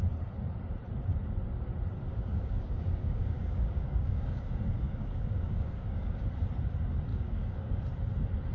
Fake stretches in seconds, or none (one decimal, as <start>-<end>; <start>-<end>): 2.1-6.2; 7.1-7.8